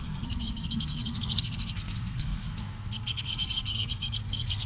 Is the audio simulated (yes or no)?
yes